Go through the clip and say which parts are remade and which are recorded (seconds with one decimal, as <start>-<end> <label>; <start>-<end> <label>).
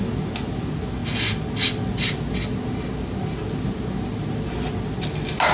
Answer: 0.0-5.5 recorded